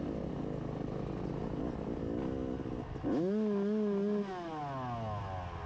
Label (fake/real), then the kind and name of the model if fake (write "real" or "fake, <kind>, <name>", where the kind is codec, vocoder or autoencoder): real